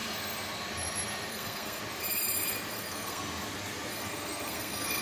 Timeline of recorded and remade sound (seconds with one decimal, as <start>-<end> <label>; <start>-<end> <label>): 0.0-1.3 recorded; 1.3-1.8 remade; 1.8-2.7 recorded; 2.7-3.2 remade; 3.2-3.9 recorded; 3.9-5.0 remade